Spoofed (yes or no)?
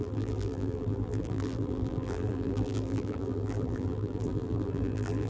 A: yes